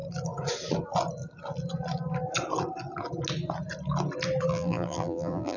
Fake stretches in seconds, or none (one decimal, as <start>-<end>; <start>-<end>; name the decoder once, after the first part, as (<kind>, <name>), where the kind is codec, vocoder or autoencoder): 4.5-5.6 (vocoder, BigVGAN v2)